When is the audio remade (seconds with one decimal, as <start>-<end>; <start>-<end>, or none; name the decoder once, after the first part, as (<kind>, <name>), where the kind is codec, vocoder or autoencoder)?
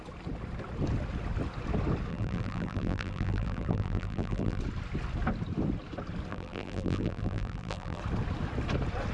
2.1-4.6 (vocoder, BigVGAN v2); 6.3-8.0